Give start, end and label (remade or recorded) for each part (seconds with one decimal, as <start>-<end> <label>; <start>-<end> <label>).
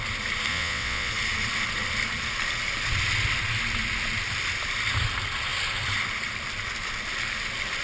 0.0-0.5 recorded; 0.5-1.1 remade; 1.1-7.8 recorded